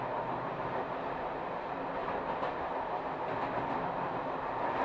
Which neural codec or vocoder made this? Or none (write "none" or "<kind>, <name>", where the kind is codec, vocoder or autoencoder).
none